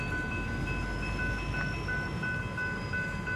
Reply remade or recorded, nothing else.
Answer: recorded